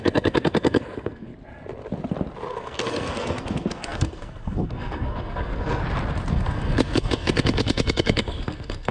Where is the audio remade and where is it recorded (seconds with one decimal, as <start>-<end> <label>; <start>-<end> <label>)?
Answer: 0.0-1.3 remade; 1.3-2.5 recorded; 2.5-5.8 remade; 5.8-6.3 recorded; 6.3-8.9 remade